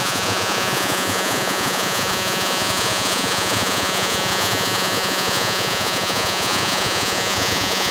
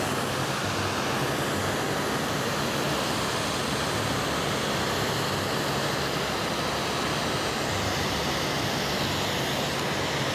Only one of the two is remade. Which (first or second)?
first